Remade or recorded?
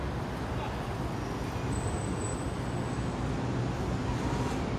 recorded